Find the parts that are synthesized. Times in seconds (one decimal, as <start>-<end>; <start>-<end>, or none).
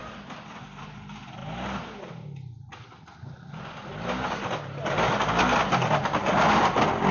none